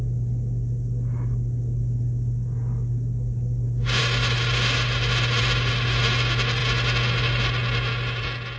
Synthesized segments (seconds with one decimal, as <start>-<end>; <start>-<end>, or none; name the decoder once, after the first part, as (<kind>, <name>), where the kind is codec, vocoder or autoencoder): none